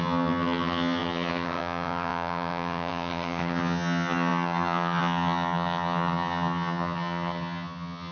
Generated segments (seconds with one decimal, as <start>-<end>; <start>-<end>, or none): 0.0-8.1

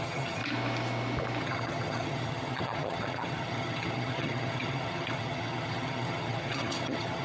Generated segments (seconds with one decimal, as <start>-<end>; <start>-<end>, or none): 0.0-0.4; 1.4-7.2

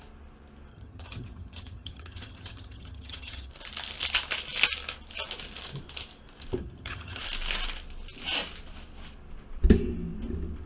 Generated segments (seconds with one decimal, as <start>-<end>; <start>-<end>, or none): 0.7-3.5; 6.6-7.2